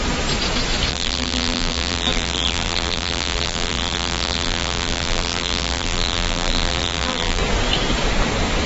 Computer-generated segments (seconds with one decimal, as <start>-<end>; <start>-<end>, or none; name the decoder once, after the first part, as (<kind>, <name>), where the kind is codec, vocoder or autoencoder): 0.9-7.4 (vocoder, BigVGAN v2)